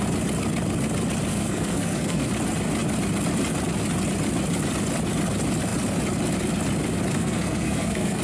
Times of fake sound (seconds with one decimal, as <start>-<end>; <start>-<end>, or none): 1.3-2.3; 7.1-8.2